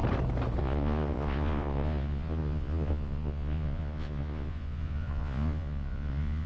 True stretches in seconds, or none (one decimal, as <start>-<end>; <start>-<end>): 0.0-0.6